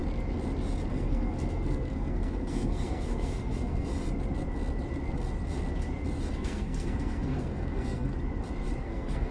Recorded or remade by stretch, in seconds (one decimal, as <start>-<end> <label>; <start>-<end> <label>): 0.0-0.9 recorded; 0.9-3.9 remade; 3.9-6.3 recorded; 6.3-8.1 remade; 8.1-8.8 recorded; 8.8-9.3 remade